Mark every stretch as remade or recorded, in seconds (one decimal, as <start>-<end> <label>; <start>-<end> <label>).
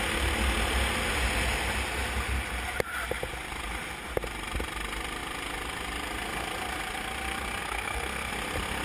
0.0-7.6 recorded; 7.6-8.3 remade; 8.3-8.8 recorded